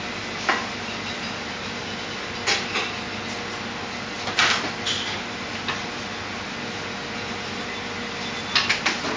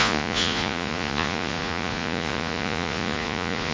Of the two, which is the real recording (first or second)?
first